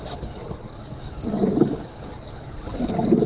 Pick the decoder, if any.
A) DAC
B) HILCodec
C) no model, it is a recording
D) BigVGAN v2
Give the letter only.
C